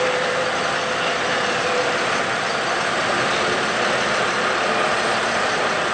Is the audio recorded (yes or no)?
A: no